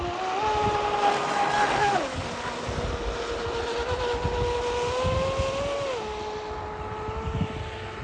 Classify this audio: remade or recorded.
recorded